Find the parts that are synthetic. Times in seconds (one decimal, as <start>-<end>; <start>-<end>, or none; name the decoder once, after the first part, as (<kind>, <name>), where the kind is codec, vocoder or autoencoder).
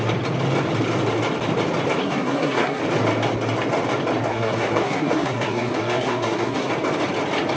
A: 2.0-2.8 (codec, SNAC); 4.3-6.7